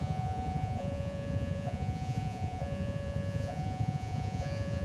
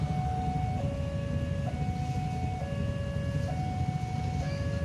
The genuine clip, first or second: second